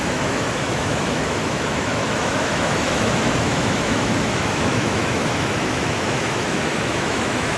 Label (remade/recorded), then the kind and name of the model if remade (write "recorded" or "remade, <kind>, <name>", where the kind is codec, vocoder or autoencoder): remade, autoencoder, DAC-VAE